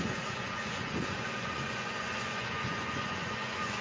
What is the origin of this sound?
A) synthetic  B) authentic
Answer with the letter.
A